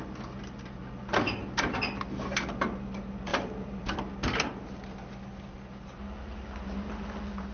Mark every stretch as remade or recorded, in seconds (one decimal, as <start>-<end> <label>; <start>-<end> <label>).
0.0-3.3 recorded; 3.3-4.0 remade; 4.0-7.5 recorded